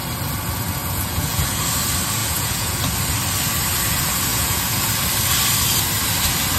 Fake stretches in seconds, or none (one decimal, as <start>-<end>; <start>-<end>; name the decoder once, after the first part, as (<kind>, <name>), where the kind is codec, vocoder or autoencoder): 0.8-1.7 (vocoder, Vocos); 2.2-2.8; 4.3-4.9